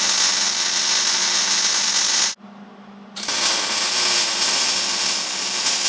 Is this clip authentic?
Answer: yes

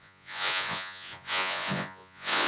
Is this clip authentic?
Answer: no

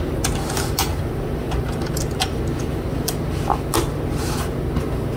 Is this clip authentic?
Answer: yes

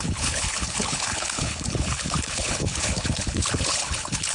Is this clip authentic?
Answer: no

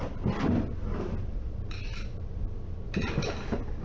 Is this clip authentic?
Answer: no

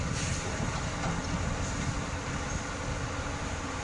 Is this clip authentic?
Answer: yes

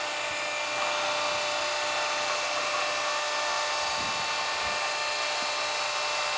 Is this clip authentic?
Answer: yes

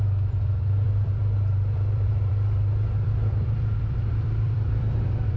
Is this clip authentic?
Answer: no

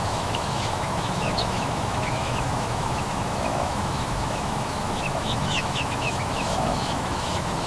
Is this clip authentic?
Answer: no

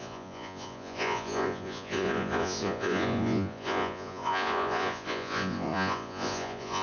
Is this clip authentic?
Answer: no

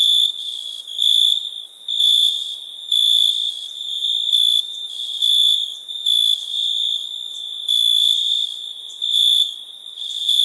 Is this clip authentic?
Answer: yes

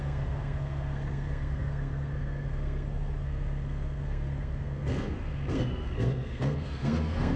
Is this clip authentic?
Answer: no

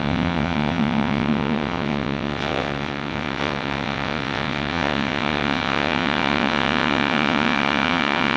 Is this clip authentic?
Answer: no